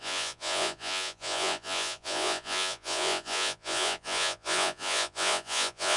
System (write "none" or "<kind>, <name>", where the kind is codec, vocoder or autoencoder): vocoder, Vocos